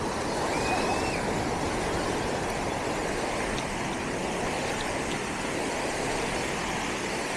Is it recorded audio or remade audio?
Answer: recorded